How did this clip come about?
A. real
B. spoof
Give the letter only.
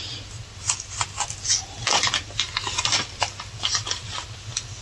A